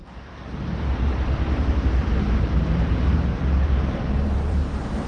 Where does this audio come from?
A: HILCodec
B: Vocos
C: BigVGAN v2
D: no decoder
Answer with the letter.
C